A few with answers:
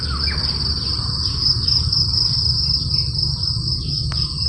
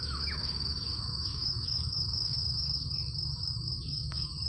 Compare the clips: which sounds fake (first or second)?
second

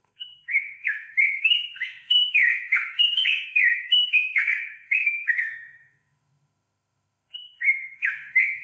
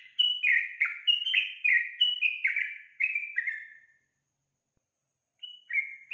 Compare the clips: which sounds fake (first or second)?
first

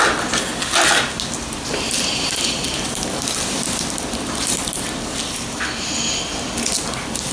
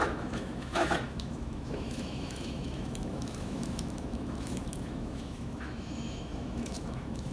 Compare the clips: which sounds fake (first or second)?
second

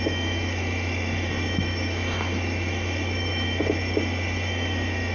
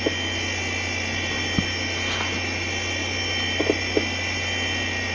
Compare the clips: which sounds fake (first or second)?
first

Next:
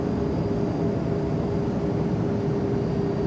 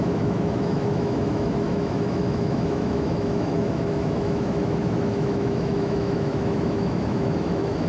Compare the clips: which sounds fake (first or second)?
second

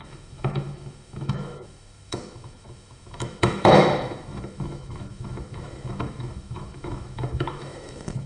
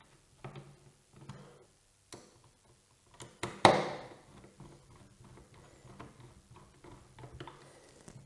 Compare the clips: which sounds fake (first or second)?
first